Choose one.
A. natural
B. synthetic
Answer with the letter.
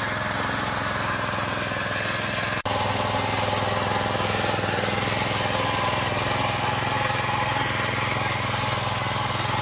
A